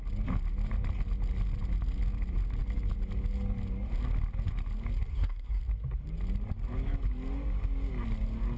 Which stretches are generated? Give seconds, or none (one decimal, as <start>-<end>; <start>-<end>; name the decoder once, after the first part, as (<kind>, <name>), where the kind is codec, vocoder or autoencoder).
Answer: 5.1-5.6 (codec, SNAC)